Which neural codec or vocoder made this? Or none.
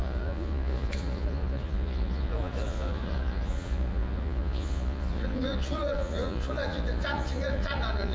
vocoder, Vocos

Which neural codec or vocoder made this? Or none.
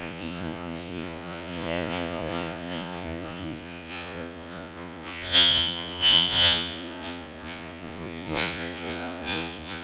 vocoder, Vocos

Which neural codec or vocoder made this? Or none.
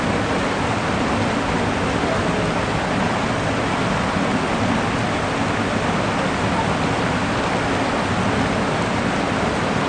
none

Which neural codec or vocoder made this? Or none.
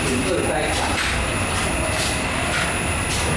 none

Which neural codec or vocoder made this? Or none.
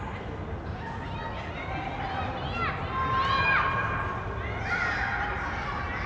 none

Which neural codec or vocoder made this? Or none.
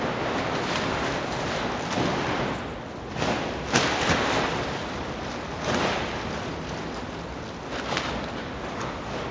none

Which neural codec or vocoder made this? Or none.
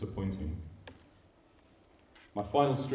none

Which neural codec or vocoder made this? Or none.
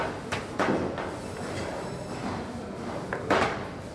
none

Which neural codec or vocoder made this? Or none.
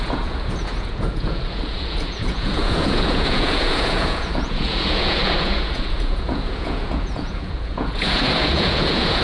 vocoder, Vocos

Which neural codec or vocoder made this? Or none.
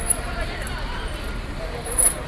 none